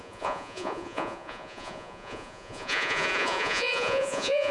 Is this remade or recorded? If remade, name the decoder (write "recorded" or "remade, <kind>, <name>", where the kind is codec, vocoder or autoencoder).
remade, vocoder, Vocos